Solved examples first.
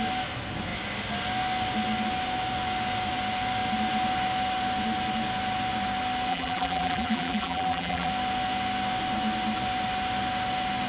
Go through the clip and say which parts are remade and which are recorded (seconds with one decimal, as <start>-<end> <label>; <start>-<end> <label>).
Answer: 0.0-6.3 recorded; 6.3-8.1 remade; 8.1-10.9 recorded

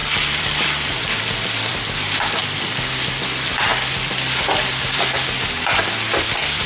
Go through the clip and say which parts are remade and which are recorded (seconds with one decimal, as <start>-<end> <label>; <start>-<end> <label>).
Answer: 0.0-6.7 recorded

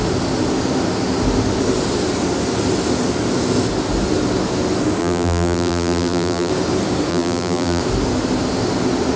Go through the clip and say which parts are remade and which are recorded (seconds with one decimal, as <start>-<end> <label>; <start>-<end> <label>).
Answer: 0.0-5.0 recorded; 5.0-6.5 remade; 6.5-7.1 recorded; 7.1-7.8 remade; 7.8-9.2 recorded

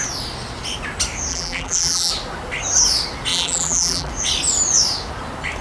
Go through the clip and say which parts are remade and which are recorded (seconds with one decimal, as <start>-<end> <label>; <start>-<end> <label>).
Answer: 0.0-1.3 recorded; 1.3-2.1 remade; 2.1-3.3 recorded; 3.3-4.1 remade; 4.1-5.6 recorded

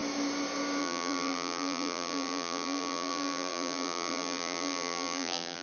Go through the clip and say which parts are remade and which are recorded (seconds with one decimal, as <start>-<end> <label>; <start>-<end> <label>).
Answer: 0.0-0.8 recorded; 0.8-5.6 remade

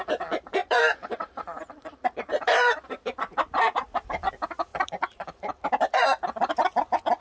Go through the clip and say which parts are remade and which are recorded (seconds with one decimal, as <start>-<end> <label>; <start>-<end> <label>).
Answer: 0.0-0.6 recorded; 0.6-4.3 remade; 4.3-4.7 recorded; 4.7-5.8 remade; 5.8-7.2 recorded

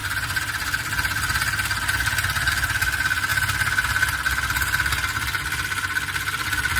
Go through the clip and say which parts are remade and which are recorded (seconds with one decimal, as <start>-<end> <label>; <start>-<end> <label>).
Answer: 0.0-6.8 recorded

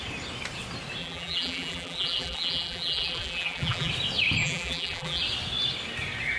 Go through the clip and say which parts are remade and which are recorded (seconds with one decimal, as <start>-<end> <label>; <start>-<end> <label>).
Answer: 0.0-1.0 recorded; 1.0-3.9 remade; 3.9-4.4 recorded; 4.4-5.2 remade; 5.2-6.4 recorded